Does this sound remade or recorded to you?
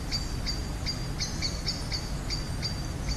recorded